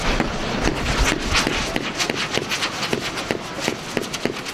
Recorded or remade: recorded